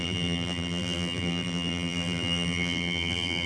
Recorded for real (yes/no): no